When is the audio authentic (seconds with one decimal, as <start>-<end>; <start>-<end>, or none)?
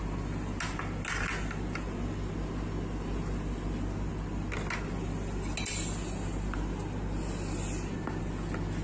0.0-8.8